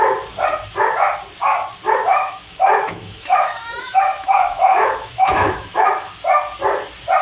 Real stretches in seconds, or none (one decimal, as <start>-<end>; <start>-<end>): 0.0-2.1; 6.1-7.2